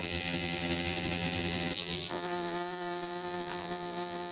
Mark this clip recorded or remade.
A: remade